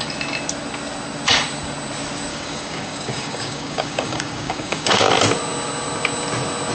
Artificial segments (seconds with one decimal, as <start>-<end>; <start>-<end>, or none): 2.3-5.1